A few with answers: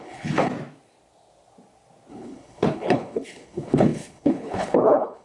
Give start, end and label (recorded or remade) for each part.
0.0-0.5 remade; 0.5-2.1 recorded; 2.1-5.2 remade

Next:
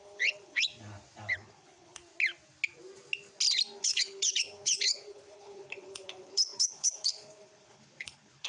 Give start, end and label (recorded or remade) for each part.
0.0-0.7 remade; 0.7-1.3 recorded; 1.3-2.0 remade; 2.0-3.8 recorded; 3.8-8.5 remade

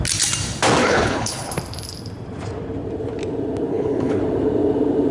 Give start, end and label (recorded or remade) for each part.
0.0-0.8 recorded; 0.8-1.5 remade; 1.5-3.7 recorded; 3.7-4.2 remade; 4.2-5.1 recorded

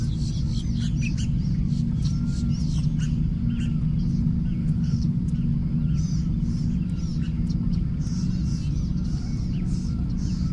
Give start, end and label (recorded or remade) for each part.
0.0-4.6 recorded; 4.6-5.2 remade; 5.2-10.5 recorded

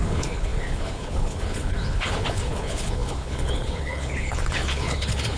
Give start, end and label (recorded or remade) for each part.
0.0-5.4 remade